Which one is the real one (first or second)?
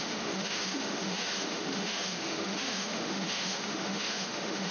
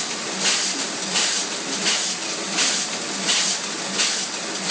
second